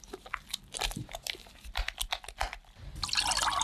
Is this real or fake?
real